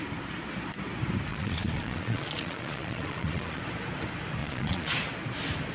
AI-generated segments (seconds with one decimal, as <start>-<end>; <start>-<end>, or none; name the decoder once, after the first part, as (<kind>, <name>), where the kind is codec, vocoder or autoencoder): 1.3-3.6 (vocoder, Vocos); 4.4-4.9

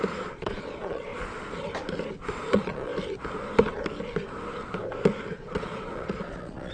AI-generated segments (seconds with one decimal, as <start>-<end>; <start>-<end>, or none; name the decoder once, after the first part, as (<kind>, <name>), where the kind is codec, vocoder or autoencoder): 0.0-1.1 (vocoder, Vocos); 2.5-2.9; 5.3-6.7

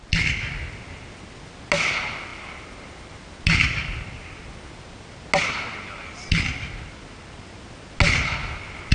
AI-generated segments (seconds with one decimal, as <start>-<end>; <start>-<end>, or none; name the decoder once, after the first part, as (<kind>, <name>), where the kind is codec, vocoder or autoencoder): none